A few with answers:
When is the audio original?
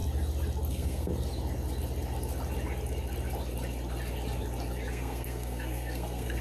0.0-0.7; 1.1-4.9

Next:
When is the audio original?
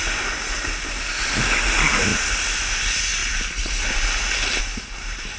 0.0-5.4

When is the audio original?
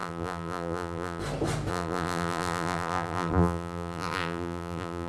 1.2-1.7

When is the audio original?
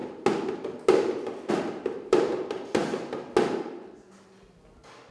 0.0-1.5; 2.8-5.1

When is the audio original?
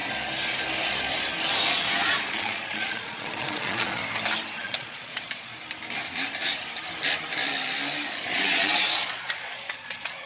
0.0-1.7; 4.0-4.6; 5.5-8.3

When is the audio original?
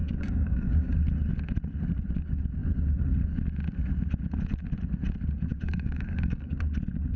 0.9-5.5; 6.5-7.2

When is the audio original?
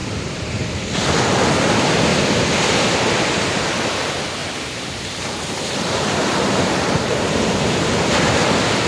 0.0-4.4; 8.5-8.9